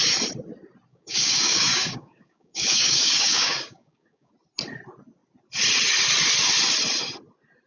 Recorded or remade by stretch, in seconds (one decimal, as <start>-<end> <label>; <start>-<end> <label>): 0.0-0.9 recorded; 0.9-4.3 remade; 4.3-7.7 recorded